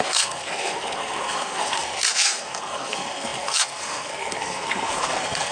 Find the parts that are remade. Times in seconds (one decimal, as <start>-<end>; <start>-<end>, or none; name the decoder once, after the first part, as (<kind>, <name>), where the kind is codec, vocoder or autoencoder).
0.0-5.5 (codec, SNAC)